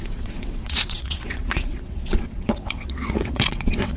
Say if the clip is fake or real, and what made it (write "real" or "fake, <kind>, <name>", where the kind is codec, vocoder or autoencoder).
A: fake, vocoder, WaveNeXt